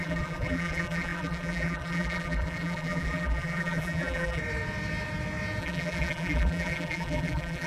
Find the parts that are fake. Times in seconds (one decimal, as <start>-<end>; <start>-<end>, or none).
0.0-4.4; 5.6-7.7